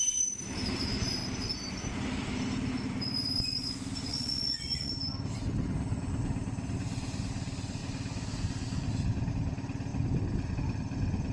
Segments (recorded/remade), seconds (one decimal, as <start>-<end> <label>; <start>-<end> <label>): 0.0-4.1 recorded; 4.1-4.9 remade; 4.9-11.3 recorded